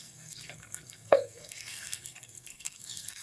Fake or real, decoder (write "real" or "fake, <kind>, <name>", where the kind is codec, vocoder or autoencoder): fake, codec, SNAC